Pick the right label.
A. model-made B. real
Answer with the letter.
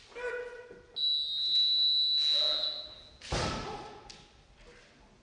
B